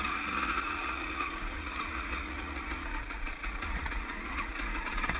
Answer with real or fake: fake